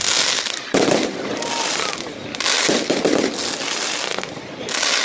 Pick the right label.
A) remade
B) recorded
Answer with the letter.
B